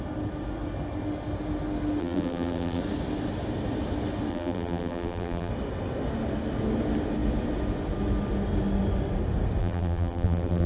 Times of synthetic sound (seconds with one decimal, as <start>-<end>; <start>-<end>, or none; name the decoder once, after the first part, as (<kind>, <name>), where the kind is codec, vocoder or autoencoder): 2.0-2.8 (vocoder, BigVGAN v2); 4.3-5.5; 9.6-10.7